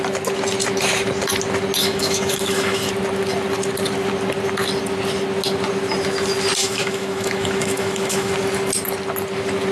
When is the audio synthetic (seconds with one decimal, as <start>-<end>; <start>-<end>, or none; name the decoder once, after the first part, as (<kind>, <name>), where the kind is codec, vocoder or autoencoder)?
1.8-2.9 (autoencoder, DAC-VAE); 6.6-8.3